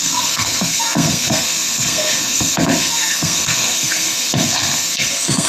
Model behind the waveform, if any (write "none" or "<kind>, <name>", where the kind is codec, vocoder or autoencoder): codec, SNAC